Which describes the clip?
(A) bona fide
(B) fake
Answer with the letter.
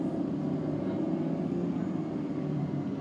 B